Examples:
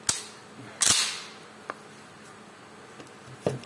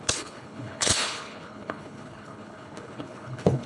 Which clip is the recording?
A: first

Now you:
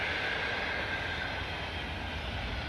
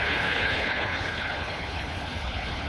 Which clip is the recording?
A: first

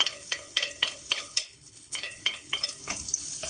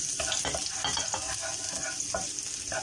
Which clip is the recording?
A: second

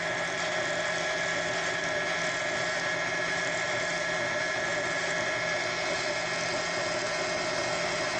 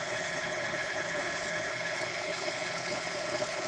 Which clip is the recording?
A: first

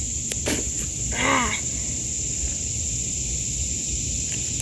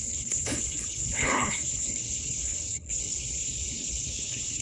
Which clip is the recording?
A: first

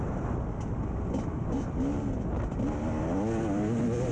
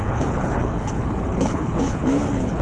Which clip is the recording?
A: first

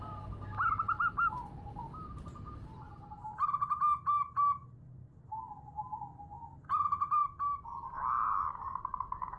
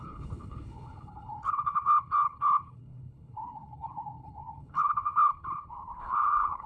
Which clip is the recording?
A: first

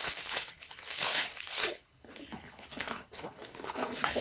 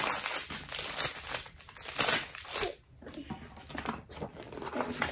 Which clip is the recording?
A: second